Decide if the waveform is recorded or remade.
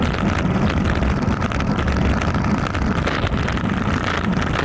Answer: recorded